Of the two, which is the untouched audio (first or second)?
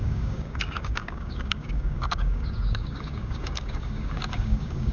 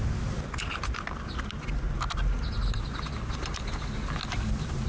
second